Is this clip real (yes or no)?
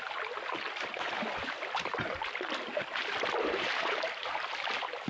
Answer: yes